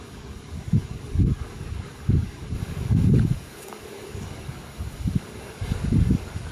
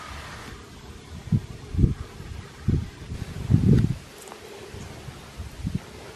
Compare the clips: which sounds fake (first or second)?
first